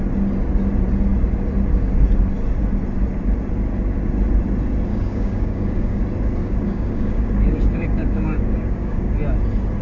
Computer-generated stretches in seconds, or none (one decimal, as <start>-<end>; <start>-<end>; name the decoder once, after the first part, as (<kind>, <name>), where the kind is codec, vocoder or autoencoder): 4.9-6.0 (codec, DAC); 6.4-9.1